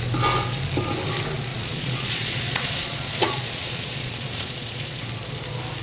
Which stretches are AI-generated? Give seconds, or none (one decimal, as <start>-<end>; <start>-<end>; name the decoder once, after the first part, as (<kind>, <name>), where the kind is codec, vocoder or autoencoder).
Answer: 1.5-5.0 (vocoder, Vocos)